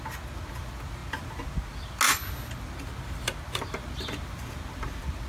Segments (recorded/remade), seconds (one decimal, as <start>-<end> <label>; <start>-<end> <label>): 0.0-5.3 recorded